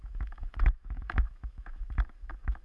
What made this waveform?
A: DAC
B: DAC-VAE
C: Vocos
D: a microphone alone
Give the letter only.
B